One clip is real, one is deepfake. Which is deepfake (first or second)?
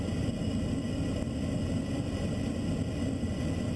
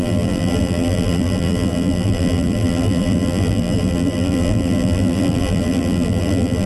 second